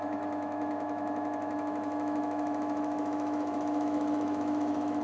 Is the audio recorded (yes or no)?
no